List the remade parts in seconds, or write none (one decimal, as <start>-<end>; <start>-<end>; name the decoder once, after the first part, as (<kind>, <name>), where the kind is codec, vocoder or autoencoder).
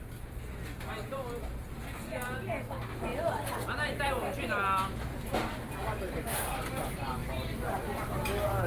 7.2-8.1 (vocoder, BigVGAN v2)